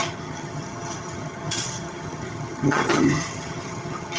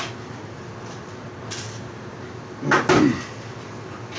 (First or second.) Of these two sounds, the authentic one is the second